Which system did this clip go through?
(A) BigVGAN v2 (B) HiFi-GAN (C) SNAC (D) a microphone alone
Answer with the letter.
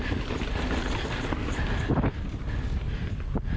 D